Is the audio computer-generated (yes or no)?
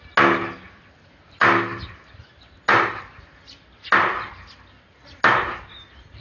no